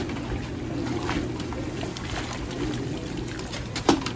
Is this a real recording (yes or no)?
no